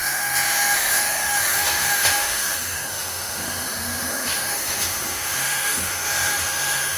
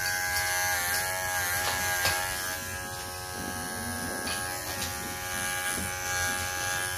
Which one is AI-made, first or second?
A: first